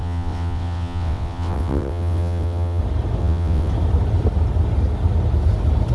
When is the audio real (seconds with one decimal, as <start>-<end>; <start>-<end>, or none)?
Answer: 2.8-3.2; 3.7-5.9